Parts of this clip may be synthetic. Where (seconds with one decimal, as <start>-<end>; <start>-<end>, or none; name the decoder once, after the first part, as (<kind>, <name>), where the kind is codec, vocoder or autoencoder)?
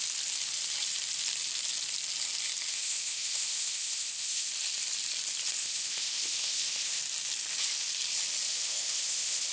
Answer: 2.7-4.5 (codec, ZipCodec); 5.6-7.0; 8.5-9.5